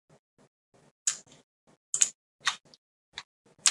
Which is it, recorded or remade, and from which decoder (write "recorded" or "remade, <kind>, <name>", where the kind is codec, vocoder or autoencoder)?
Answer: recorded